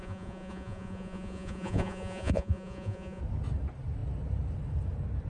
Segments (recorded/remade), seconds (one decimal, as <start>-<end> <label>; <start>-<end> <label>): 0.0-3.2 remade; 3.2-5.3 recorded